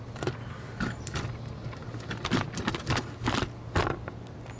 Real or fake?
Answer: real